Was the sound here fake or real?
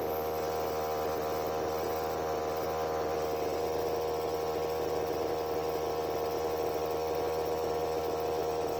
real